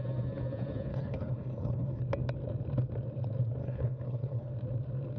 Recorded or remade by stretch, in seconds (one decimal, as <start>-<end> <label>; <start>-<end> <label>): 0.0-0.9 recorded; 0.9-2.0 remade; 2.0-3.6 recorded; 3.6-4.5 remade; 4.5-5.2 recorded